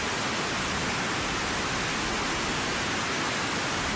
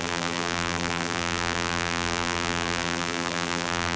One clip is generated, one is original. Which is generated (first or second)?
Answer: second